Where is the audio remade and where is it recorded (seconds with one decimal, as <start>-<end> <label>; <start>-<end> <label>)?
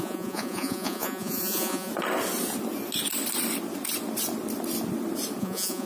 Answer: 0.0-1.9 remade; 1.9-5.4 recorded; 5.4-5.9 remade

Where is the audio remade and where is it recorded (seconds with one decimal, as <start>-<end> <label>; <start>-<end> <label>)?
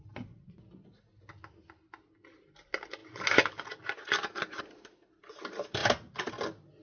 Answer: 0.0-6.8 recorded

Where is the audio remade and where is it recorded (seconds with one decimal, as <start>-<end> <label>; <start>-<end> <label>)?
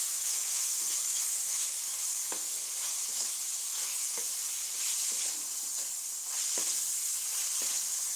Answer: 0.0-4.4 remade; 4.4-8.2 recorded